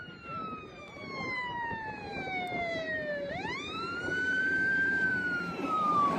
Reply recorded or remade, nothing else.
remade